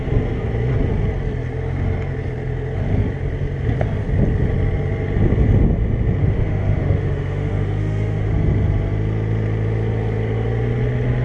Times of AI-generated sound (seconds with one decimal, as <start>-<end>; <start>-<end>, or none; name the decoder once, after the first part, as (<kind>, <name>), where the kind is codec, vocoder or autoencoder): 6.2-8.3 (autoencoder, DAC-VAE)